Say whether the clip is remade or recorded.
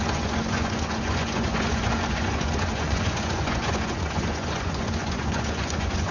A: remade